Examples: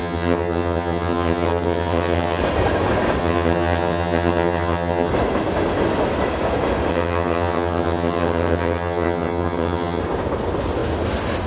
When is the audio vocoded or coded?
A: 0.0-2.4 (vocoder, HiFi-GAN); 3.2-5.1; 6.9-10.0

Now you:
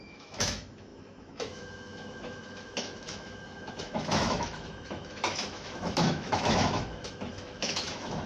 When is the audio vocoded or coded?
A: 0.0-8.3 (autoencoder, DAC-VAE)

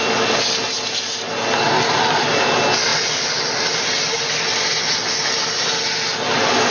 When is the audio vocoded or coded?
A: 2.9-4.1 (vocoder, BigVGAN v2)

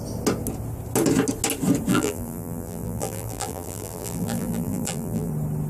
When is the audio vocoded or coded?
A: 1.9-5.3 (vocoder, BigVGAN v2)

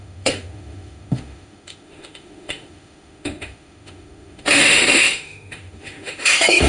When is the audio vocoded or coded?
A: 0.0-6.7 (autoencoder, DAC-VAE)